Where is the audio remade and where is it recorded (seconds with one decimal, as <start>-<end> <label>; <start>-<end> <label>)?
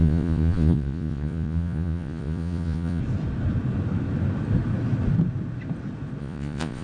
0.0-3.0 remade; 3.0-6.2 recorded; 6.2-6.8 remade